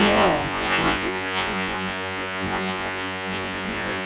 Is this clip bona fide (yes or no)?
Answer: no